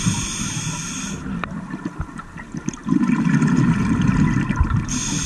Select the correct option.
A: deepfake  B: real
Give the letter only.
B